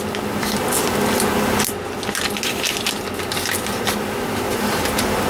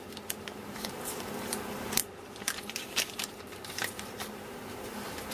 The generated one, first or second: second